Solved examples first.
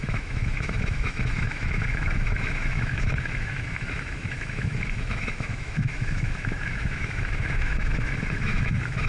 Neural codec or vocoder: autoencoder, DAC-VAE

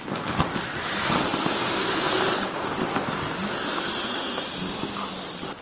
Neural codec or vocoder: none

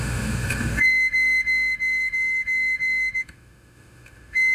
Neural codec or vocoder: autoencoder, DAC-VAE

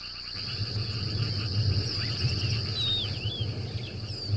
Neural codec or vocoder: none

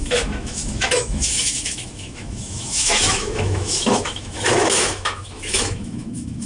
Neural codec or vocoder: autoencoder, DAC-VAE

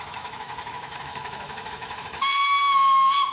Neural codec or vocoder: autoencoder, DAC-VAE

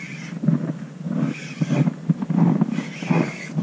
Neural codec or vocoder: none